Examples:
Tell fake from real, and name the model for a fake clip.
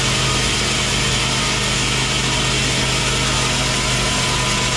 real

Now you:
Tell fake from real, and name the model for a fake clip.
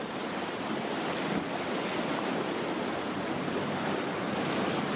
real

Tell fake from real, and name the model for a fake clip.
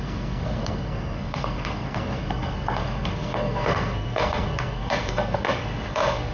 fake, codec, SNAC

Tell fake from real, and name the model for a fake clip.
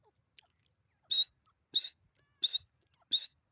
real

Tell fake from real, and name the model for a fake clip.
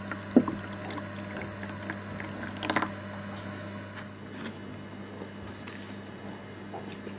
real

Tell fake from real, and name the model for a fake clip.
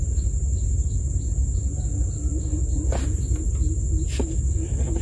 real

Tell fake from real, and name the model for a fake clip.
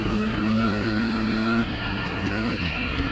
fake, codec, SNAC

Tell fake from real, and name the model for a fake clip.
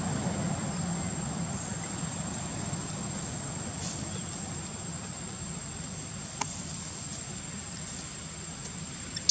real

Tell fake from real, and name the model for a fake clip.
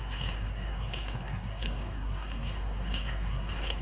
fake, codec, SNAC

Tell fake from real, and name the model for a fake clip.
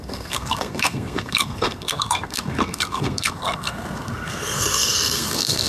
fake, codec, SNAC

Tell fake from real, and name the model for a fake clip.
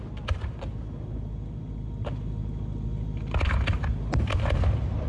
real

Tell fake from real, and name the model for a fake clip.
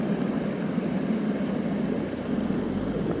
real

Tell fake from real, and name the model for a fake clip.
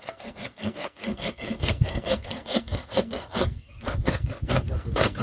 fake, codec, SNAC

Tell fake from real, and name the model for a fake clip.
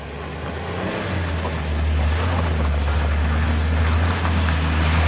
real